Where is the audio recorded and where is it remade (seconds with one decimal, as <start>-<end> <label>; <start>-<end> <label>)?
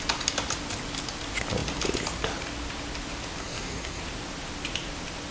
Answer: 0.0-3.4 recorded; 3.4-4.0 remade; 4.0-5.3 recorded